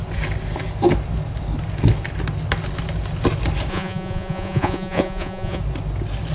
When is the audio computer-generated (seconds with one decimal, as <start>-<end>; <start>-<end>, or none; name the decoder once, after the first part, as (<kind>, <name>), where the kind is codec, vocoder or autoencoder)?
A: 3.7-5.6 (vocoder, Vocos)